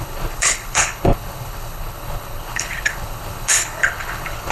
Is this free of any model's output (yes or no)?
no